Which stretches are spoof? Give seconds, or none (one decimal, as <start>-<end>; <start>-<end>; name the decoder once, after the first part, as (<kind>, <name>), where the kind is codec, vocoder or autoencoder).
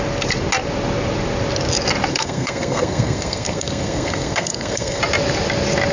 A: 2.1-5.0 (codec, SNAC)